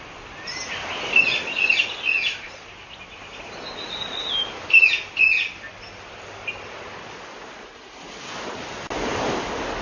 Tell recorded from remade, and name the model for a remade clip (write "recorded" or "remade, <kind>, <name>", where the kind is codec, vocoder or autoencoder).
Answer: recorded